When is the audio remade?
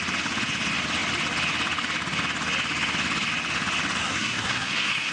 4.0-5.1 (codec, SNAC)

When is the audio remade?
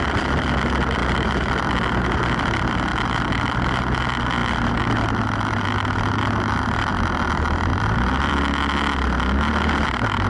1.0-2.0 (vocoder, BigVGAN v2); 2.9-3.6; 7.7-8.3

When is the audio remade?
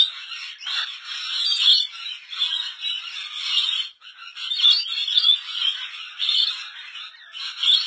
5.0-6.5 (vocoder, Vocos)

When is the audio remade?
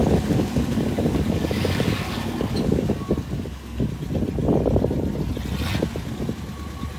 0.0-3.9 (codec, DAC)